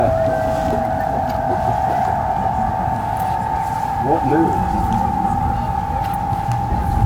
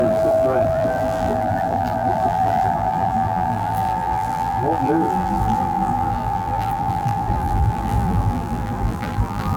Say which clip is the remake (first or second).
second